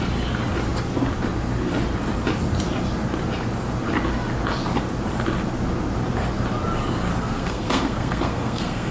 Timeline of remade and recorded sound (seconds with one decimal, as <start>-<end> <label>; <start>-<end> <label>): 0.0-7.1 recorded; 7.1-8.9 remade